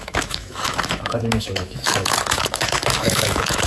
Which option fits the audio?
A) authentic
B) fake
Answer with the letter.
B